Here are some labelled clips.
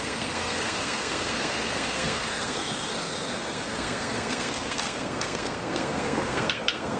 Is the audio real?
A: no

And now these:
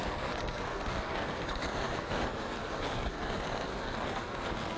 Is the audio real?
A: no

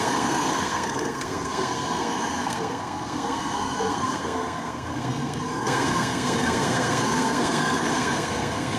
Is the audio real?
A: no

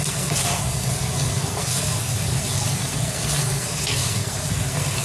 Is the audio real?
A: no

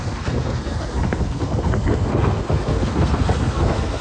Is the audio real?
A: no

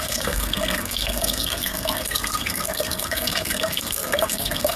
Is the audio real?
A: no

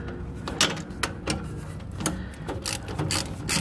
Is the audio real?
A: yes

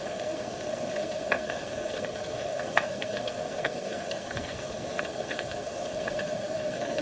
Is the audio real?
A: no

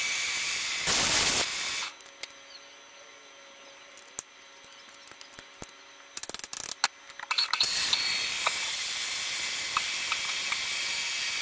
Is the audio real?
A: yes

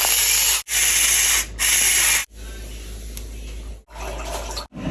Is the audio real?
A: yes